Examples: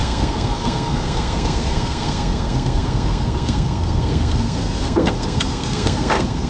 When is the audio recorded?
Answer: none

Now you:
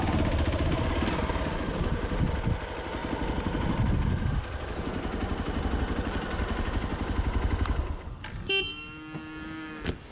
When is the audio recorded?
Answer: 0.0-10.1

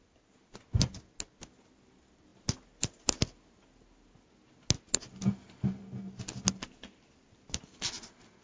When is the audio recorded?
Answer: 0.0-8.4

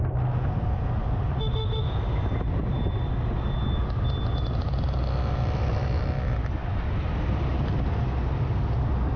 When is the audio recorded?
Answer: 0.0-9.2

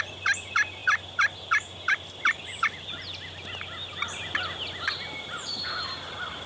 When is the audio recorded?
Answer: 0.0-6.5

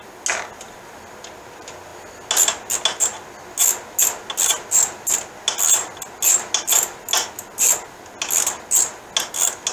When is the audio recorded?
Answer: 0.0-9.7